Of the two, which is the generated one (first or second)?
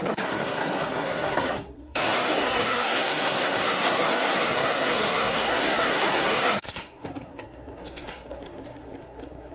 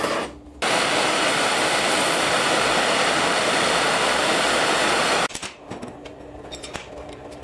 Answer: first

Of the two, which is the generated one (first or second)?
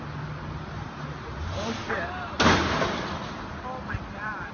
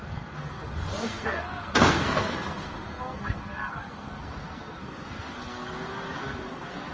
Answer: second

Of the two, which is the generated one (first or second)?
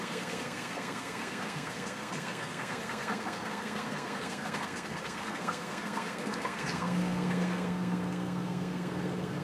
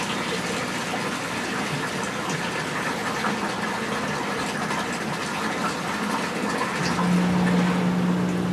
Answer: first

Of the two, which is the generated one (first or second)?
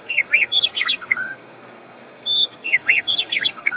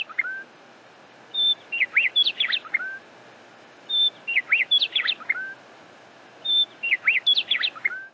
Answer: first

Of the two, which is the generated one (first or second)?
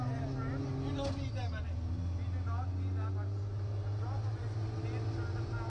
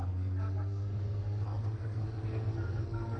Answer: second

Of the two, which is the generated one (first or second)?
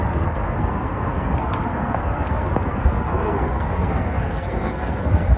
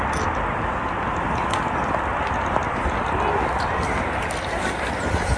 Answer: first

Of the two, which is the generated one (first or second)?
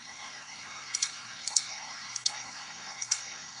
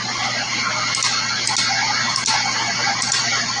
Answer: first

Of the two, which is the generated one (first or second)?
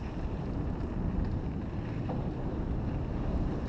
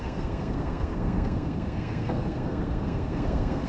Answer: second